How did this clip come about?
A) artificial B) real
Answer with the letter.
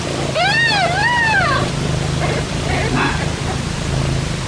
B